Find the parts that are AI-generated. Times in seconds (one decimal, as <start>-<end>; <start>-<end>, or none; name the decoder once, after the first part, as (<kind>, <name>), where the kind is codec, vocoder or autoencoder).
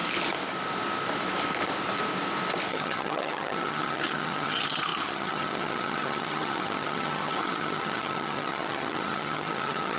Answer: 2.7-10.0 (vocoder, HiFi-GAN)